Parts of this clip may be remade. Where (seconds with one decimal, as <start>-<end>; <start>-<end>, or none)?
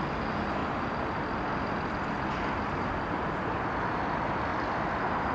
0.6-3.8; 4.5-5.3